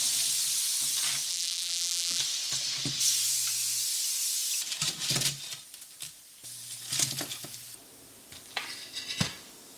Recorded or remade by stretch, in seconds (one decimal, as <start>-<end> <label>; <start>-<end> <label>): 0.0-1.3 recorded; 1.3-2.2 remade; 2.2-9.8 recorded